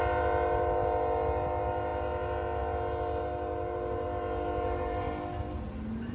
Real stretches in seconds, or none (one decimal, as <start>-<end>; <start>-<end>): 0.0-6.1